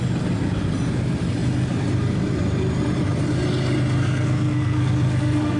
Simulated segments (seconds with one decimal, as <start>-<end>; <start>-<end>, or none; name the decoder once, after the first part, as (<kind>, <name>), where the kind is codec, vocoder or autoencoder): 4.0-5.6 (codec, SNAC)